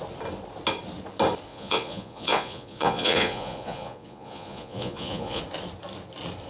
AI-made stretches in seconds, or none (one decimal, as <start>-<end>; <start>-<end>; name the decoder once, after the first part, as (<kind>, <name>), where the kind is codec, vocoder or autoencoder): 1.5-5.4 (vocoder, Vocos)